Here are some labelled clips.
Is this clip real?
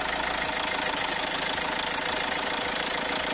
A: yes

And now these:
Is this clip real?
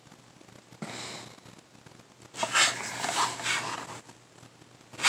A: yes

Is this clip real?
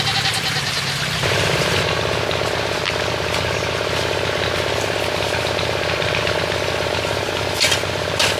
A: yes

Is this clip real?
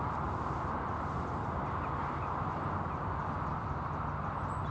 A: yes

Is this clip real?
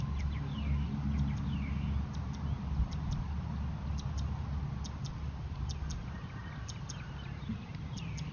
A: yes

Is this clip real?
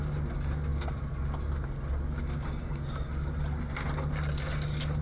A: yes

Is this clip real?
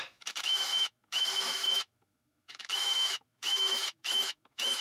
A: no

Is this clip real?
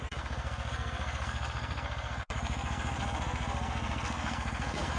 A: no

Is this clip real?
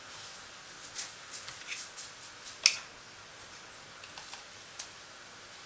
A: yes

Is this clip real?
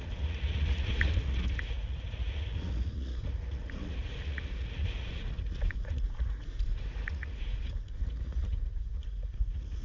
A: no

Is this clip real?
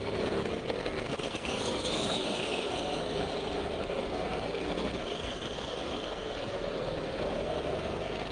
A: no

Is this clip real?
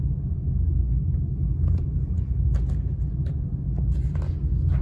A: yes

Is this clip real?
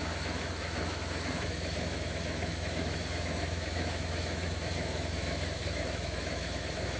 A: no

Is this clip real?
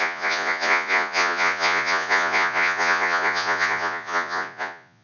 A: no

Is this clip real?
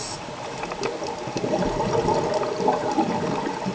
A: yes